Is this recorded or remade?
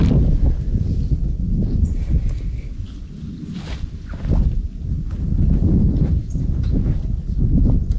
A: recorded